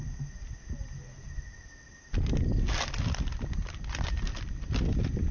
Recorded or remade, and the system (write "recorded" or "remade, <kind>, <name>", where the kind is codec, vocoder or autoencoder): recorded